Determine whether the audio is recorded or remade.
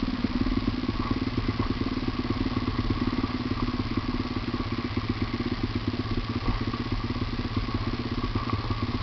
recorded